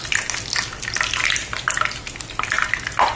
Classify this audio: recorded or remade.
recorded